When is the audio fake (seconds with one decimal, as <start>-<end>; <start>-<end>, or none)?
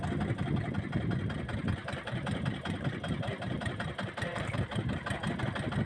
1.8-5.3